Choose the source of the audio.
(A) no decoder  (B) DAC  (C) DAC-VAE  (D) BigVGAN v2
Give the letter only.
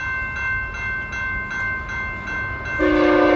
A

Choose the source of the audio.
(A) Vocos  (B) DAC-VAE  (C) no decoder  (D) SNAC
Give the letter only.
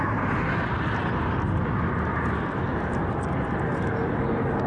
C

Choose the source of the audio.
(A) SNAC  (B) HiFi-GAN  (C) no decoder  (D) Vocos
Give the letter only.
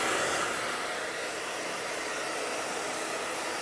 C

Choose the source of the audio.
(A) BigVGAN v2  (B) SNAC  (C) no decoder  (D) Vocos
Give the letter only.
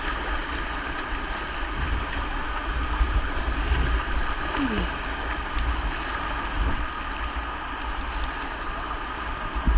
C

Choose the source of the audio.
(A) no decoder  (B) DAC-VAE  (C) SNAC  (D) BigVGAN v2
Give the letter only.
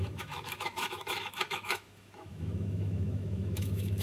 B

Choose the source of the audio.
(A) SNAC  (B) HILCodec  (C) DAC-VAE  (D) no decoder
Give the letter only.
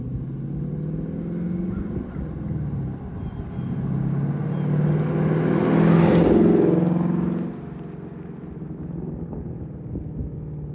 D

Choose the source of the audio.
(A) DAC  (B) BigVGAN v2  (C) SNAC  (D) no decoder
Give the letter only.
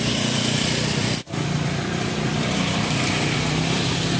B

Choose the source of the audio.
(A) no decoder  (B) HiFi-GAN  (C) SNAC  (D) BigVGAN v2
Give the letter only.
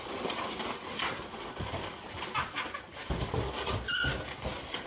A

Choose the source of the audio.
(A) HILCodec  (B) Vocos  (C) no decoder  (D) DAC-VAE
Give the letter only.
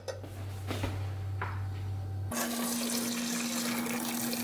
C